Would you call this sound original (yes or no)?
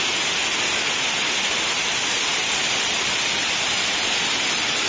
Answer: yes